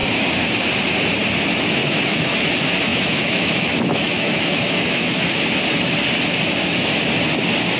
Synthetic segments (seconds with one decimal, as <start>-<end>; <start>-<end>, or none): 1.8-2.4; 2.9-5.4